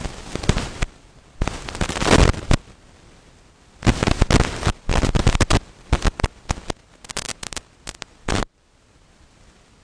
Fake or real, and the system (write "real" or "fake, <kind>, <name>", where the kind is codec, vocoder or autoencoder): real